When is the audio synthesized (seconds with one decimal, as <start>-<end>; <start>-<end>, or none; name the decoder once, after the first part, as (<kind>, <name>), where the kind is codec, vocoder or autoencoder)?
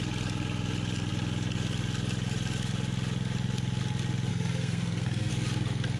4.3-5.3 (codec, SNAC)